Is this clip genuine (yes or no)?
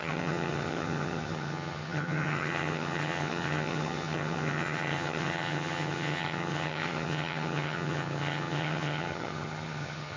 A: no